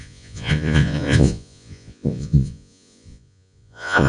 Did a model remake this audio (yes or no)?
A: yes